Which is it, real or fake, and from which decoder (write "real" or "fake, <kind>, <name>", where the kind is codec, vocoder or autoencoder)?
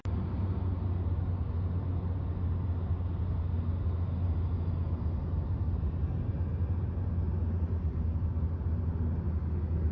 real